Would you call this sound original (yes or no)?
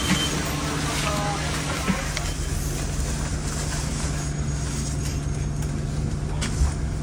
yes